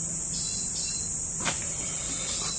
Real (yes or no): yes